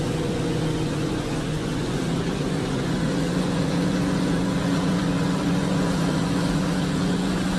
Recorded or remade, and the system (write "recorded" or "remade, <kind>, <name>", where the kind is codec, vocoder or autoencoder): remade, vocoder, Vocos